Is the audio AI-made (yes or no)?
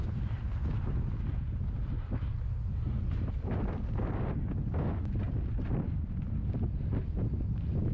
no